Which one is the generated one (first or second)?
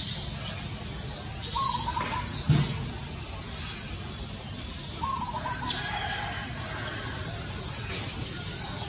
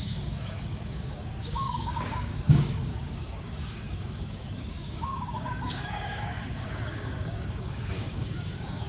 second